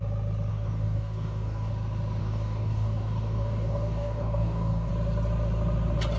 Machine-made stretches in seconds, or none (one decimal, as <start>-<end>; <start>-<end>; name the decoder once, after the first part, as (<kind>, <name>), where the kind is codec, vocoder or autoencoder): 0.5-1.7 (codec, DAC); 2.2-4.9